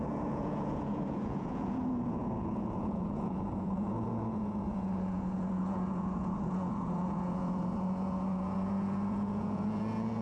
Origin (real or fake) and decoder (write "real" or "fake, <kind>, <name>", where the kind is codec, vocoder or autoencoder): fake, vocoder, Vocos